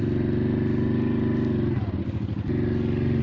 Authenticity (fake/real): real